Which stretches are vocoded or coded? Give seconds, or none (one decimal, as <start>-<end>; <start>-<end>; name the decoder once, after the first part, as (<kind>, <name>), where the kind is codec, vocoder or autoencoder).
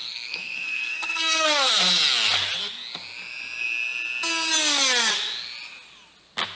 0.0-1.7 (codec, SNAC)